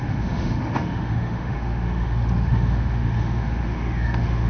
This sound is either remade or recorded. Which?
remade